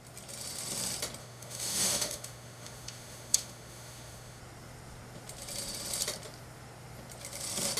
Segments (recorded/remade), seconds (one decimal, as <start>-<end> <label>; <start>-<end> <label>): 0.0-1.2 recorded; 1.2-4.4 remade; 4.4-7.8 recorded